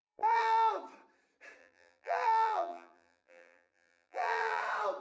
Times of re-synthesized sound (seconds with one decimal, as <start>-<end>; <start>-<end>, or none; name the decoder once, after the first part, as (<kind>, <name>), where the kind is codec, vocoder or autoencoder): 0.0-0.7 (vocoder, BigVGAN v2); 1.6-4.6